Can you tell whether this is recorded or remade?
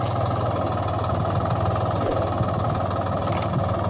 recorded